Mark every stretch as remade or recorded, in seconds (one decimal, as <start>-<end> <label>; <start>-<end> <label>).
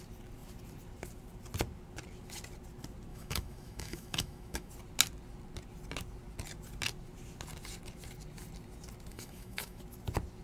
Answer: 0.0-3.1 recorded; 3.1-4.7 remade; 4.7-9.1 recorded; 9.1-9.8 remade; 9.8-10.4 recorded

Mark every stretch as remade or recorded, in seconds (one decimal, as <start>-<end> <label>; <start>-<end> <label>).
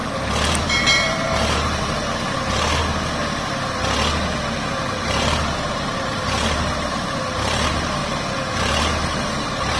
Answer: 0.0-0.6 recorded; 0.6-2.8 remade; 2.8-5.0 recorded; 5.0-8.0 remade; 8.0-8.5 recorded; 8.5-9.8 remade